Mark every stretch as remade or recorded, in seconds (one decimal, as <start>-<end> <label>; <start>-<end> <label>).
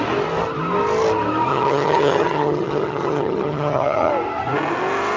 0.0-1.5 recorded; 1.5-4.1 remade; 4.1-5.2 recorded